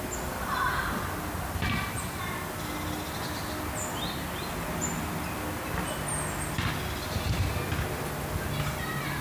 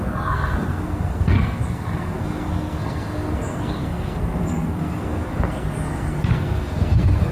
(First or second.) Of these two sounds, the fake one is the second